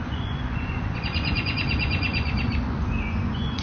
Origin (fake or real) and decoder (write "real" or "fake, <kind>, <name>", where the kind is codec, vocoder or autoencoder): fake, vocoder, Vocos